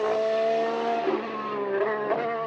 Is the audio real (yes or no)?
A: yes